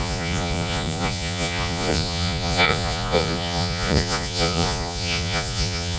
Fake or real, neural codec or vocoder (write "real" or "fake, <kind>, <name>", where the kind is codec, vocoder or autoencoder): fake, vocoder, Vocos